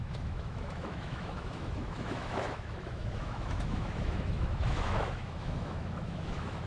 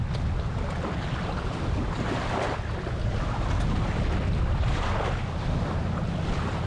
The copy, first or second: first